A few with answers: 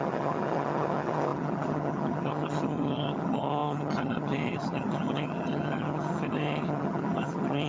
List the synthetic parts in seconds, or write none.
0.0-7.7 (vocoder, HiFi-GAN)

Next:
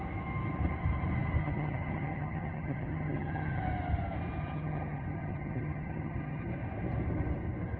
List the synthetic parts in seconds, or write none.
1.4-3.6 (vocoder, HiFi-GAN); 4.4-6.5

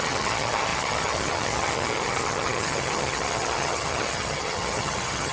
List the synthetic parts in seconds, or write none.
0.0-5.3 (vocoder, HiFi-GAN)